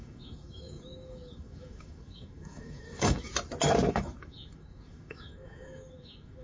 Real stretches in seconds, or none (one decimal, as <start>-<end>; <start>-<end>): 3.3-3.9